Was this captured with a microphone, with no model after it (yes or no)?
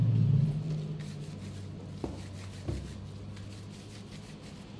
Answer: yes